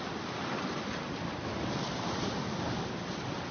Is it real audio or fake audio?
real